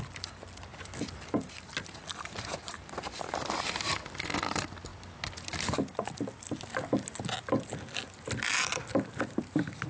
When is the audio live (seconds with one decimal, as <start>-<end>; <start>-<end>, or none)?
0.0-9.9